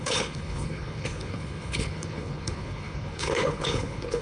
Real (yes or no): no